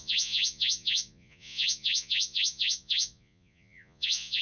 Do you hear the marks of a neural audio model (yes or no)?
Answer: yes